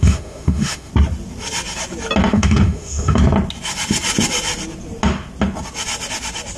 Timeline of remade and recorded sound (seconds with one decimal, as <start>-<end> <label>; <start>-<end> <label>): 0.0-0.9 remade; 0.9-2.3 recorded; 2.3-3.2 remade; 3.2-6.6 recorded